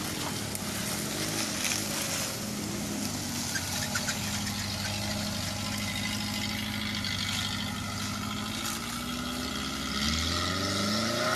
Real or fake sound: real